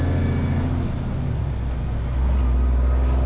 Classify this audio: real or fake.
real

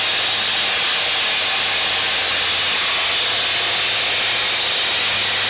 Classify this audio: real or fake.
real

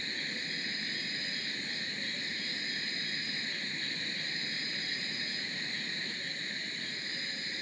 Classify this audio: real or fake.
real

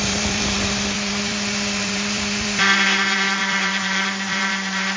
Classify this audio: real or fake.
fake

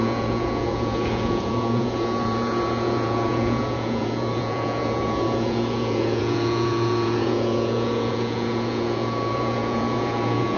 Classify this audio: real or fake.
fake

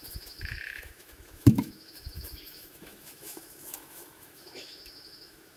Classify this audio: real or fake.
fake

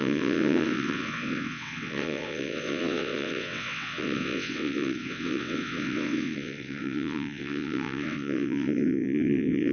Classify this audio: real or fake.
fake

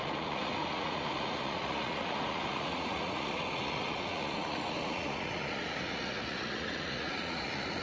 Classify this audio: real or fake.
fake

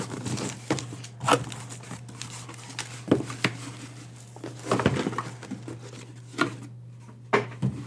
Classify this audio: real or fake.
real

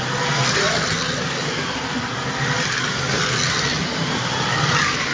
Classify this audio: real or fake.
real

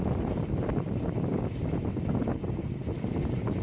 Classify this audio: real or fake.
real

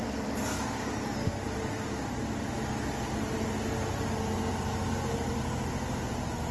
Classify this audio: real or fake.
real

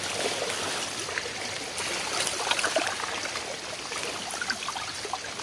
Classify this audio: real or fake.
real